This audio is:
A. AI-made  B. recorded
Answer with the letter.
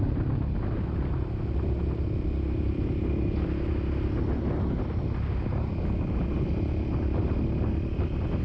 B